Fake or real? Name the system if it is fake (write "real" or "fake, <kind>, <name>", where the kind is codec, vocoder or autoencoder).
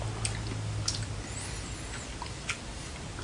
real